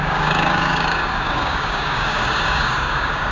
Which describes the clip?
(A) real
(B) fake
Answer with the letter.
B